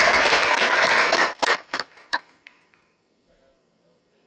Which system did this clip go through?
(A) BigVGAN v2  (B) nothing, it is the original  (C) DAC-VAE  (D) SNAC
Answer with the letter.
D